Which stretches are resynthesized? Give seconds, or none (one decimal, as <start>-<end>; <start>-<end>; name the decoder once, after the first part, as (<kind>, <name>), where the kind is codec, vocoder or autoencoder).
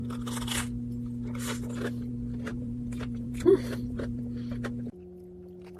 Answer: 2.5-4.2 (vocoder, BigVGAN v2)